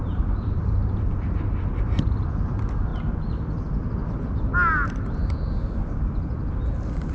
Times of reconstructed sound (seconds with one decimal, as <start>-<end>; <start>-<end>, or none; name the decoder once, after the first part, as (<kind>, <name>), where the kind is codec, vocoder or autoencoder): 0.0-2.9 (vocoder, BigVGAN v2)